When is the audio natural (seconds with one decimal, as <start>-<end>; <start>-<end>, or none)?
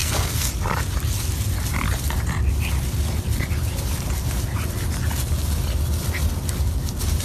0.5-7.2